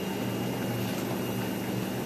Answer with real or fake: real